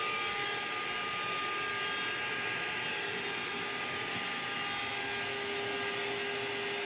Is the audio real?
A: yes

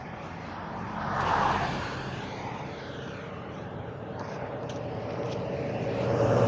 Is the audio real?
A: no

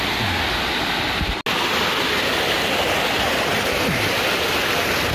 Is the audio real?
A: yes